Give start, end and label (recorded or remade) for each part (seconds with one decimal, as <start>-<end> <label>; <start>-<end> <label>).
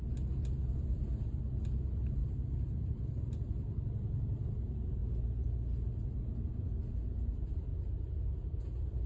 0.0-9.1 recorded